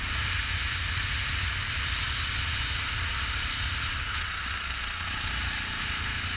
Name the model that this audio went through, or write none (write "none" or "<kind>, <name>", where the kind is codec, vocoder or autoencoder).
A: none